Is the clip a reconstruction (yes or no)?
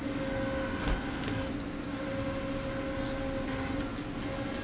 no